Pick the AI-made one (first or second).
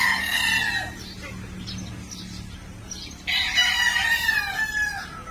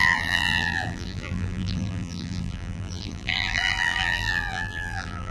second